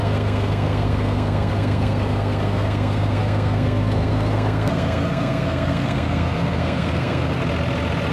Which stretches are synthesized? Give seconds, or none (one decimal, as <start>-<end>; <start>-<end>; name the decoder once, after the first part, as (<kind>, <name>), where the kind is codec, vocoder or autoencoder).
0.0-7.4 (codec, SNAC)